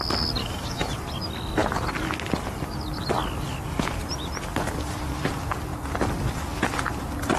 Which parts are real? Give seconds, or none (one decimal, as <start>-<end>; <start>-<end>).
0.0-0.4; 0.9-7.4

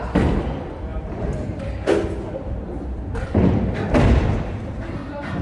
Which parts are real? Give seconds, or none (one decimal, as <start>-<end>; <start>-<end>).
0.0-2.9

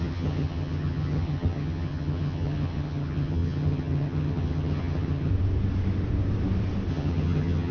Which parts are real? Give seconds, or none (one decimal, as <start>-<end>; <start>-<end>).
5.3-6.9

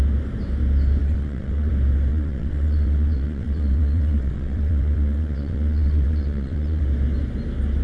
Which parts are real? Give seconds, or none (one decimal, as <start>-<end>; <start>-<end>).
0.0-1.0; 1.7-2.1; 6.8-7.8

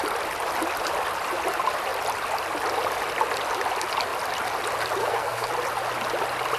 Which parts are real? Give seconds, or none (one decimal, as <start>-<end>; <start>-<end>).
0.0-5.0; 5.5-6.6

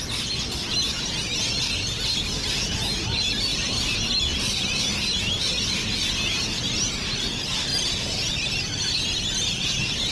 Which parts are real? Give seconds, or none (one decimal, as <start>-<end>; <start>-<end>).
0.0-3.5; 4.4-7.7

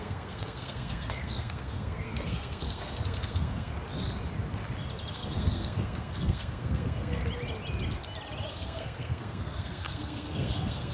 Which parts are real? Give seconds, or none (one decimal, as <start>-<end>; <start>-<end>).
3.7-5.1; 7.2-8.5

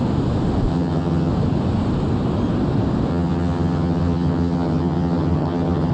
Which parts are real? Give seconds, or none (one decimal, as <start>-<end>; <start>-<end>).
0.0-0.7; 1.3-3.1